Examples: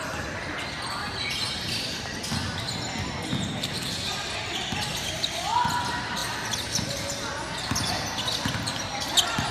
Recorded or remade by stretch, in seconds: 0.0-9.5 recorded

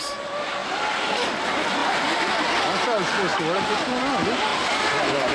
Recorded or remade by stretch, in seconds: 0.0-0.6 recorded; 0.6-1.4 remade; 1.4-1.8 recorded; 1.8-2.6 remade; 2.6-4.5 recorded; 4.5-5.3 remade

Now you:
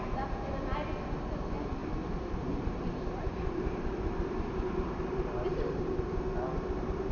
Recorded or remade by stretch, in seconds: 0.0-1.8 recorded; 1.8-6.1 remade; 6.1-7.1 recorded

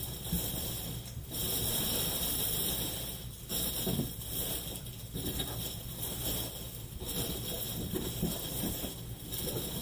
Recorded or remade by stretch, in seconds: 0.0-9.8 recorded

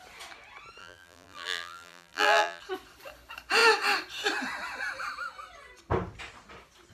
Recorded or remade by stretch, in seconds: 0.0-0.8 recorded; 0.8-2.6 remade; 2.6-6.9 recorded

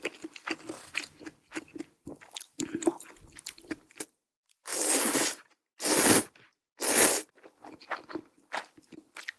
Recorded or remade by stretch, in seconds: 0.0-9.4 recorded